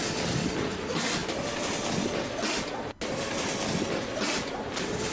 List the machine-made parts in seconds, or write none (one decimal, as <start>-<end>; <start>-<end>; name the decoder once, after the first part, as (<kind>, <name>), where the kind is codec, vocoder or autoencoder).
none